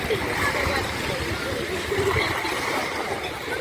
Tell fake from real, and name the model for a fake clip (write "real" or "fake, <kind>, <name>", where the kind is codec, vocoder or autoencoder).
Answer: real